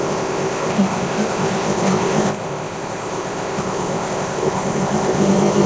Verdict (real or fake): fake